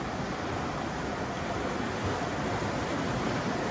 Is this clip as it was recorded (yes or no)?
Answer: yes